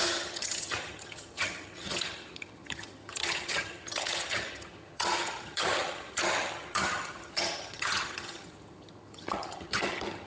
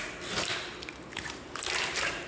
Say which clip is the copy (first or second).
first